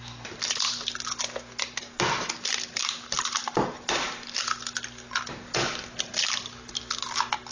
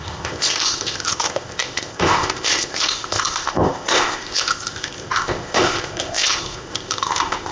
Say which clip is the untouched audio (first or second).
first